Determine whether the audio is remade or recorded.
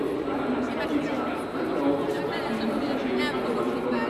recorded